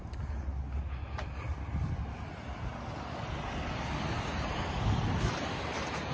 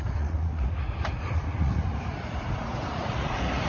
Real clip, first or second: first